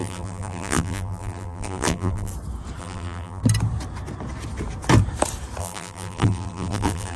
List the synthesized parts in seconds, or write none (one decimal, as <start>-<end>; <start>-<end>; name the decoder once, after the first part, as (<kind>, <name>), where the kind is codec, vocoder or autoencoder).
0.0-2.3 (vocoder, BigVGAN v2); 2.8-3.4; 5.6-7.2

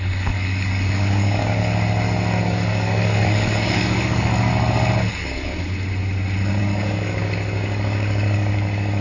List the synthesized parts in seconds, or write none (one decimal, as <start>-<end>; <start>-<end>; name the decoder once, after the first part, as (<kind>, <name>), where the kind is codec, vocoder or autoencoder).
0.0-1.6 (codec, DAC); 2.4-4.5; 5.1-5.5; 6.6-9.0

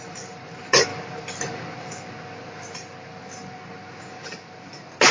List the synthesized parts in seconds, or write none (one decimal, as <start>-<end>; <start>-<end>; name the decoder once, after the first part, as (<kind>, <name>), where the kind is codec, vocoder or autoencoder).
none

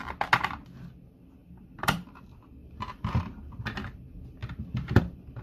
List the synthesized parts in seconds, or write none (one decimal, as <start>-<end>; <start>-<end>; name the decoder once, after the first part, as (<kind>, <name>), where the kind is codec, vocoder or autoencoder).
1.4-2.2 (vocoder, BigVGAN v2); 2.6-3.2

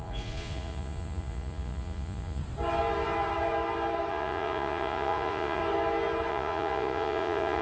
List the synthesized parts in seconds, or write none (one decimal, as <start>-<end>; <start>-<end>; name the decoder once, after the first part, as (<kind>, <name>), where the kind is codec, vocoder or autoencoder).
0.0-2.4 (vocoder, Vocos); 4.1-5.6; 6.3-7.6

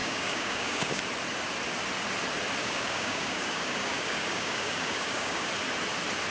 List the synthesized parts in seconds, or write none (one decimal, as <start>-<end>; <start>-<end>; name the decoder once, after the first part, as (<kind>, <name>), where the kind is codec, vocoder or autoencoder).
0.0-1.0 (codec, DAC); 2.6-5.5

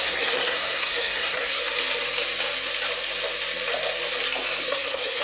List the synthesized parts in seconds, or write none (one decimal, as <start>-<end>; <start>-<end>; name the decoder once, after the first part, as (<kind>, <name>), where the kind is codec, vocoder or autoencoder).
0.0-1.6 (codec, SNAC); 4.7-5.2